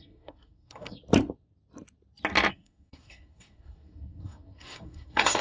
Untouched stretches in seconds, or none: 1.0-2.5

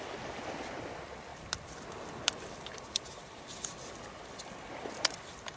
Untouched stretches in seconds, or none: 0.0-5.6

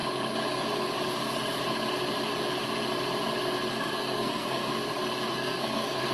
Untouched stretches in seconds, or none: 0.0-3.7; 4.7-5.3

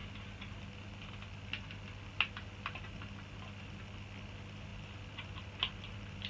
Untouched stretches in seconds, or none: 0.0-6.3

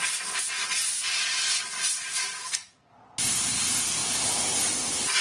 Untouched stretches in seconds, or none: 0.0-2.4; 2.9-5.2

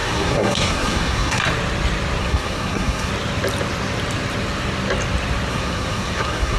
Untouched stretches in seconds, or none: 1.4-2.2; 3.1-5.5

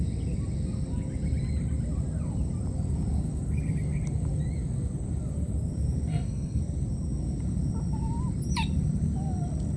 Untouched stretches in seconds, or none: 0.0-6.1; 6.6-9.8

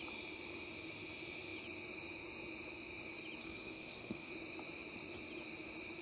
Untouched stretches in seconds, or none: 0.0-3.4; 4.3-6.0